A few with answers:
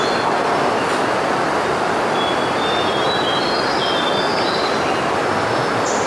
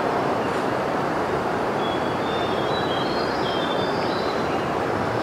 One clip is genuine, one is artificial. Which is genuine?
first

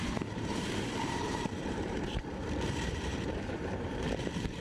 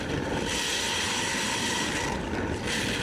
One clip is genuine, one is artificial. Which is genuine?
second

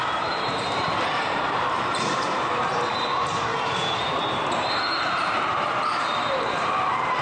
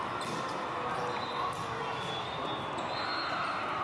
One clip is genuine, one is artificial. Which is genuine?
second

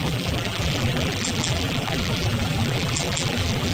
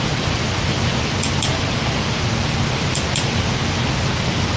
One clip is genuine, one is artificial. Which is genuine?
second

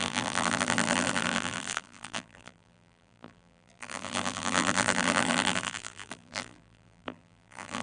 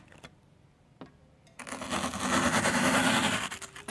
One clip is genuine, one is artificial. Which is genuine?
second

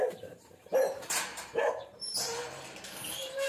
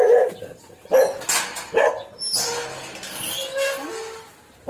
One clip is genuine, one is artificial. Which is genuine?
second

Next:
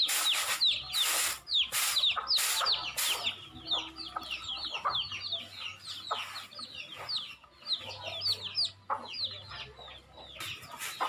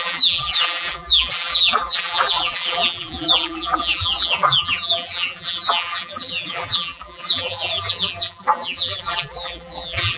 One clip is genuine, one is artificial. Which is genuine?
first